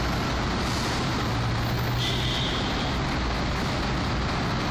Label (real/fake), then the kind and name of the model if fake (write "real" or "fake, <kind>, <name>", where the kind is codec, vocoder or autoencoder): real